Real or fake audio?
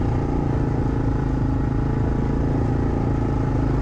real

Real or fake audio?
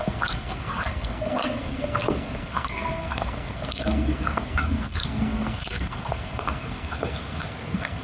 fake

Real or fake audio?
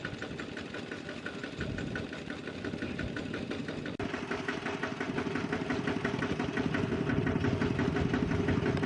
real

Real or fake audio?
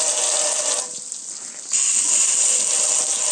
real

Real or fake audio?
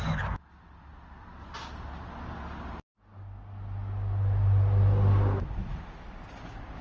real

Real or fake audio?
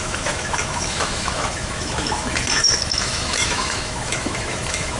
fake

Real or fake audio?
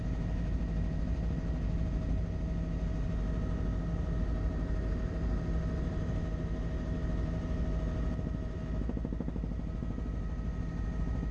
real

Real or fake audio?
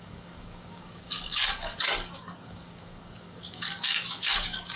fake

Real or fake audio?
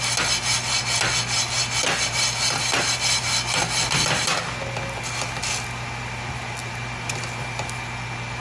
real